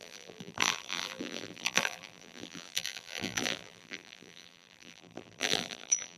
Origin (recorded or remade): remade